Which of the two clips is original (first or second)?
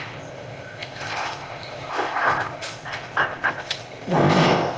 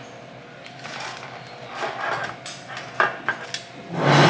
second